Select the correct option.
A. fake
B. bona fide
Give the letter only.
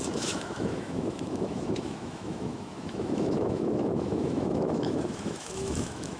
A